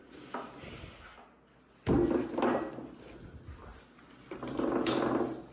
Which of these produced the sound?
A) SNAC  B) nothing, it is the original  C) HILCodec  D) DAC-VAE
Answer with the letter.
B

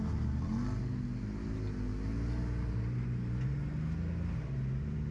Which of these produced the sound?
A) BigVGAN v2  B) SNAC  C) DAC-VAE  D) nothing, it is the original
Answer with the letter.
D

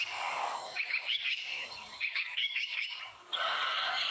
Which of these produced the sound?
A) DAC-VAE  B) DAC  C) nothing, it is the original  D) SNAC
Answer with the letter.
B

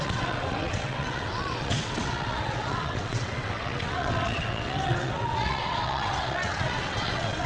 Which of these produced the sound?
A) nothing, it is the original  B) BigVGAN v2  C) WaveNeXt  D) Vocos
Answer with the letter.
C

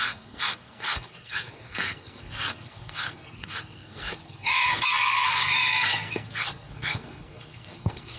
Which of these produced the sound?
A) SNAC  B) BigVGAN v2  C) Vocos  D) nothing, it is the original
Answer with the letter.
A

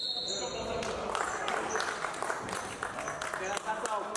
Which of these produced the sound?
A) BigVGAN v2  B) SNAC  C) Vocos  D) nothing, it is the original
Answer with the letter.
D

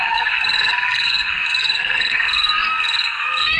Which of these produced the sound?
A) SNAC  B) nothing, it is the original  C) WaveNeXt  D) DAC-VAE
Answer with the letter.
A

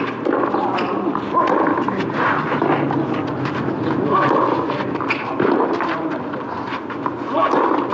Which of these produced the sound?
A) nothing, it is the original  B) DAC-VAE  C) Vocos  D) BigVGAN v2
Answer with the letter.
A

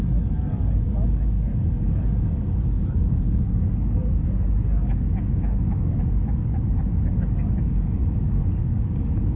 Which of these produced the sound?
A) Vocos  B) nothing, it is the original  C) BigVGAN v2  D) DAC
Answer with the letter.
D